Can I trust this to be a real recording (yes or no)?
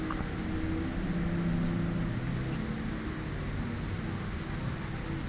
yes